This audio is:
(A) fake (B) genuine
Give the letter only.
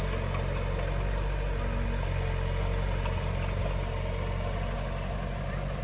B